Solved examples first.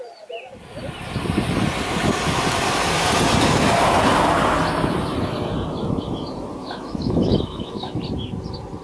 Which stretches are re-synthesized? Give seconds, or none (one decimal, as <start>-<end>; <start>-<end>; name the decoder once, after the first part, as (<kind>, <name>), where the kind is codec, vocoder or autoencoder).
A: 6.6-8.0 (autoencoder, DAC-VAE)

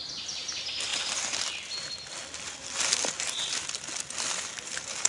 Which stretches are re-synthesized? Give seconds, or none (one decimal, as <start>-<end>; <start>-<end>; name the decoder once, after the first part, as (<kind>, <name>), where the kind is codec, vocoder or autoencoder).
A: none

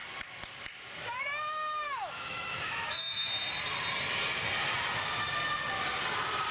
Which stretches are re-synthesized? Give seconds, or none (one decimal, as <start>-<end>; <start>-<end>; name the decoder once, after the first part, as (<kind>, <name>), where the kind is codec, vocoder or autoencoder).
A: 1.2-3.3 (autoencoder, DAC-VAE)